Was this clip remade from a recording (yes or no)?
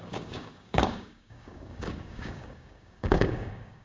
yes